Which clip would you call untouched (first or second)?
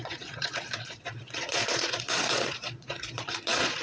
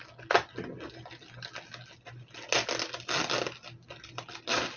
second